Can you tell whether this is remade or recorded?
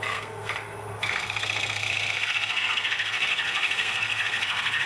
remade